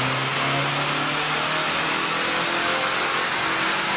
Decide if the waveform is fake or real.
real